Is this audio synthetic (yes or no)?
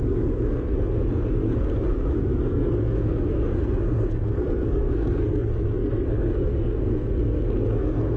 yes